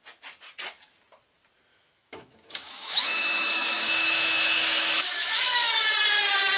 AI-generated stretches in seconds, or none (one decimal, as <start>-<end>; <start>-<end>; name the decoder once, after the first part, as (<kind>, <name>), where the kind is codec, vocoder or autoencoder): 1.7-5.7 (autoencoder, DAC-VAE)